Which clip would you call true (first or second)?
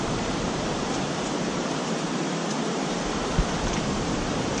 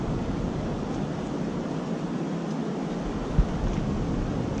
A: second